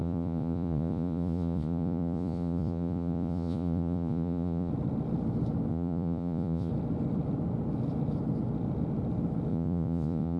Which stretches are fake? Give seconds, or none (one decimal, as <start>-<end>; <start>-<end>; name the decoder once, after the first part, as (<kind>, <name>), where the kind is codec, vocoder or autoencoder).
0.0-4.7 (vocoder, Vocos); 5.7-6.7; 9.5-10.4